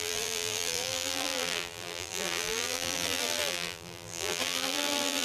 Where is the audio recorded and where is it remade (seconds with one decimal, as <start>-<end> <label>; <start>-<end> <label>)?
0.0-5.2 remade